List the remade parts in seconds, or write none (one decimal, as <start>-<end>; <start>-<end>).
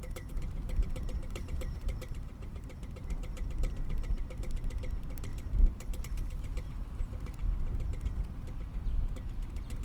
0.0-4.2; 5.3-6.0